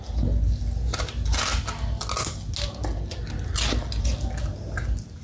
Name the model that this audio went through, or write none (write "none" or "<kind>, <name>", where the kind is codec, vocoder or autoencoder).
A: none